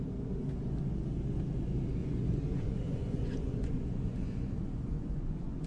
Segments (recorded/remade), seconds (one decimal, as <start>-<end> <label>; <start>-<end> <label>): 0.0-2.0 recorded; 2.0-5.7 remade